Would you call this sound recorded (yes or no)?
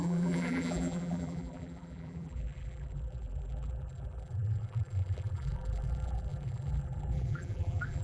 no